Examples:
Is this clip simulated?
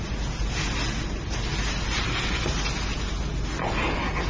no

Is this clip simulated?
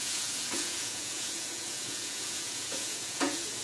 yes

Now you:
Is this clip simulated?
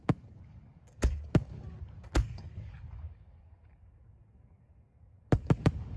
yes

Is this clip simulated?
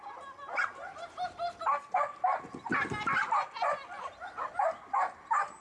no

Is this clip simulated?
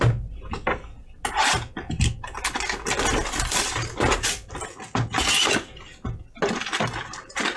no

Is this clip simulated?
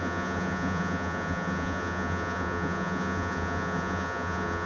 yes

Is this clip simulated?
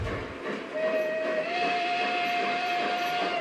yes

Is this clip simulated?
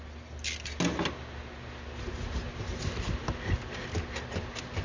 no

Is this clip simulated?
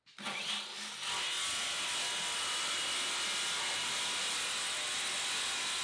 no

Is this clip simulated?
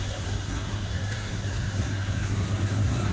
yes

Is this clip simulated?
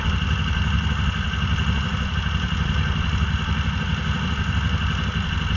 no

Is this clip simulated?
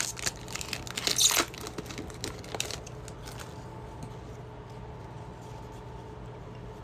no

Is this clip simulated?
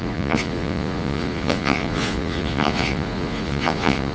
yes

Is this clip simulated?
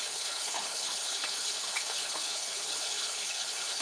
yes